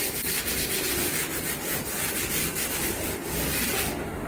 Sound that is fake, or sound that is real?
real